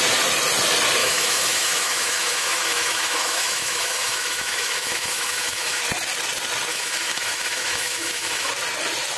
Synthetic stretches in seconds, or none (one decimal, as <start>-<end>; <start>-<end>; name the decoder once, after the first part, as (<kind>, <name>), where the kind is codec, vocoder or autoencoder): 1.0-5.8 (autoencoder, DAC-VAE); 6.7-8.5